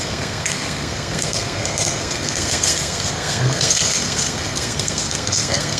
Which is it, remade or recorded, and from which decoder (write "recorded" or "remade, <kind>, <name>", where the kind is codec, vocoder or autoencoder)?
remade, codec, SNAC